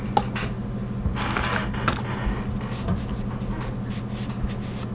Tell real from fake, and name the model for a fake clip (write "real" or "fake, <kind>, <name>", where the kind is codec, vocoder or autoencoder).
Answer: real